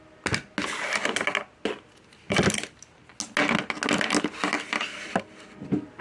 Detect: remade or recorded recorded